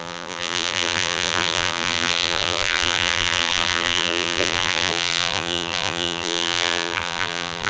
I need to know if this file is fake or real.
fake